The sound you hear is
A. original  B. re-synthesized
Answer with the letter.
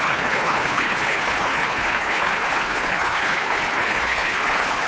B